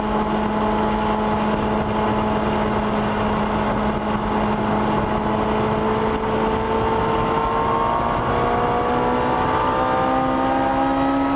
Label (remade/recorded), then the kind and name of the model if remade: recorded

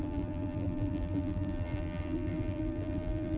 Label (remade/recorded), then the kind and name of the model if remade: remade, vocoder, BigVGAN v2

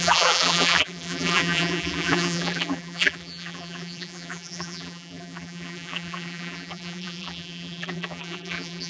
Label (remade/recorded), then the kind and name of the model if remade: remade, vocoder, BigVGAN v2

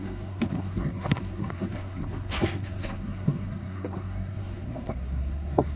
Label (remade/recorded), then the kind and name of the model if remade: remade, codec, SNAC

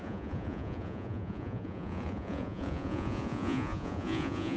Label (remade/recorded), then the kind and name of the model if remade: remade, vocoder, Vocos